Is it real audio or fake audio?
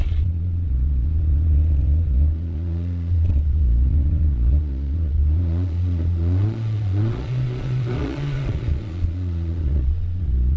fake